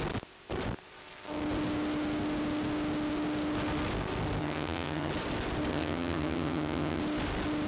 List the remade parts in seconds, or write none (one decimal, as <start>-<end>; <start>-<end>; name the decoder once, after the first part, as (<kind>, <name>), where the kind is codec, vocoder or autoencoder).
4.4-5.1 (vocoder, HiFi-GAN); 5.7-7.0